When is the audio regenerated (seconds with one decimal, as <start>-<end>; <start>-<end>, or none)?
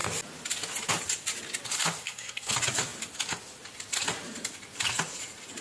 2.0-2.5